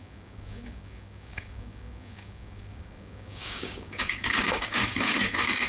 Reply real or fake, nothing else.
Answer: fake